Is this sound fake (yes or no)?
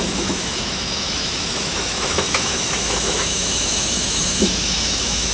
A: yes